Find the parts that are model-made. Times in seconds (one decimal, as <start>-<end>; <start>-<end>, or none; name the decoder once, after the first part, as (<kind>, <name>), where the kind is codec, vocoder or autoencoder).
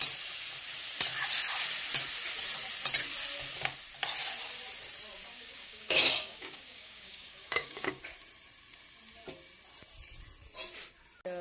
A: 5.2-8.0 (codec, DAC)